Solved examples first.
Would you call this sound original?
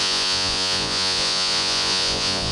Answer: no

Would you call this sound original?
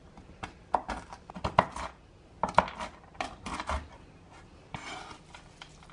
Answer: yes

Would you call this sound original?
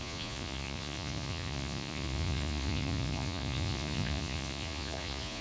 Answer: no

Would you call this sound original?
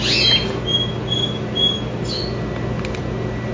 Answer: yes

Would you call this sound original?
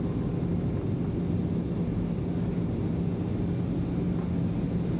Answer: yes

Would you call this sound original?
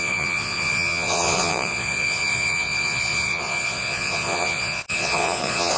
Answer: no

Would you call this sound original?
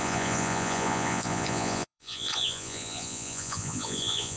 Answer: no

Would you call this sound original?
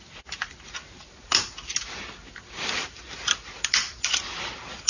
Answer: yes